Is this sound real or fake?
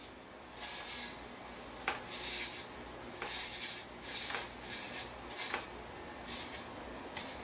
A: real